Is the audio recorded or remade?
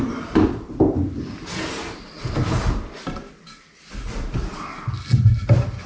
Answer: recorded